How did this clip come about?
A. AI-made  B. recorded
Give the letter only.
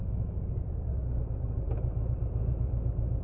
B